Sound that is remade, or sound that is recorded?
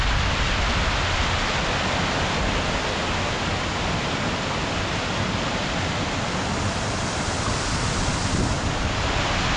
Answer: recorded